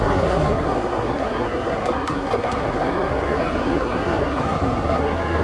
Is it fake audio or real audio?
fake